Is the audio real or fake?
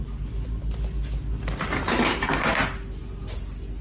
real